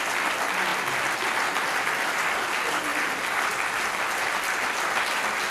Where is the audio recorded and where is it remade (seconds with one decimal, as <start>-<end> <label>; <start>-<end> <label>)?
0.0-5.5 recorded